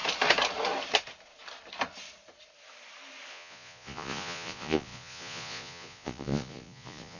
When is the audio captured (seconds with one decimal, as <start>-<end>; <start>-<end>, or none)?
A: 0.0-3.3